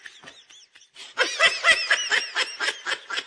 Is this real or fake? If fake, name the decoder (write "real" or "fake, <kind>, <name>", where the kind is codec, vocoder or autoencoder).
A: real